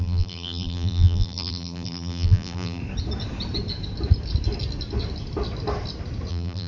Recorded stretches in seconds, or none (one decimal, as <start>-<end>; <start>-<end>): 2.8-6.3